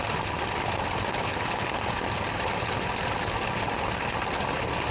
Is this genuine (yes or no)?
yes